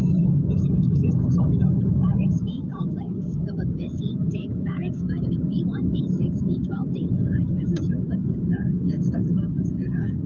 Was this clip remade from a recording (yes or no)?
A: yes